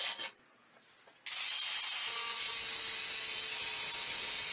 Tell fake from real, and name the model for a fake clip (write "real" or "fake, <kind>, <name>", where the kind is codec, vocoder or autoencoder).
real